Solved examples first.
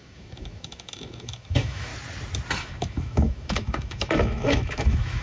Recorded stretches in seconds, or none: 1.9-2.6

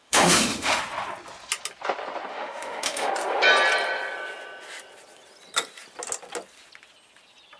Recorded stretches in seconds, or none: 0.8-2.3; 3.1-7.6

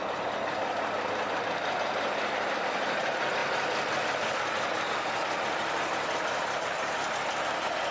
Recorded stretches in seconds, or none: 0.0-7.9

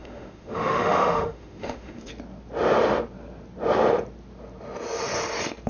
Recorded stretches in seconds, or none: 2.1-5.7

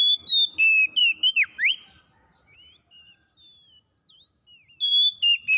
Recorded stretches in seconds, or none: 0.0-1.0; 1.7-5.6

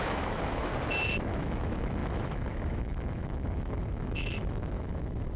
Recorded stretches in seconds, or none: 0.7-1.3

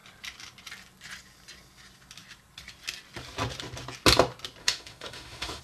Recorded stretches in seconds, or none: 0.0-4.6